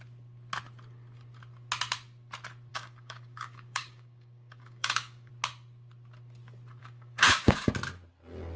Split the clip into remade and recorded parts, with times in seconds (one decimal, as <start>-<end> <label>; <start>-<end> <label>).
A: 0.0-2.7 recorded; 2.7-5.3 remade; 5.3-6.8 recorded; 6.8-7.7 remade; 7.7-8.6 recorded